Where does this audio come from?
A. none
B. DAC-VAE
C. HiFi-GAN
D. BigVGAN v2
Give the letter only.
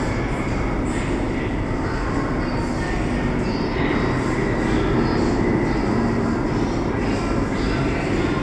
A